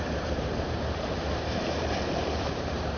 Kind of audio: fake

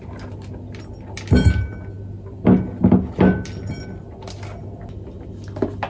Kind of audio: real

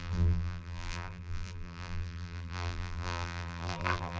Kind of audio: fake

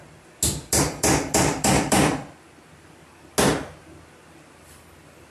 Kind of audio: real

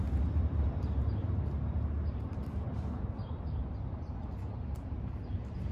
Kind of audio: fake